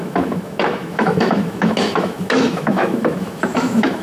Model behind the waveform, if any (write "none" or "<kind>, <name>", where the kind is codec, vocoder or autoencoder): autoencoder, DAC-VAE